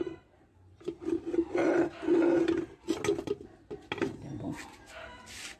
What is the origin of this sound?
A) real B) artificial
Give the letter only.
A